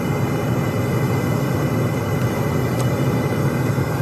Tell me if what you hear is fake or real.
real